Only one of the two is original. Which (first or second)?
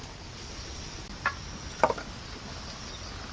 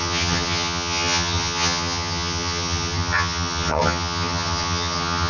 first